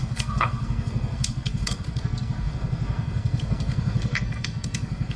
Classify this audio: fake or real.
fake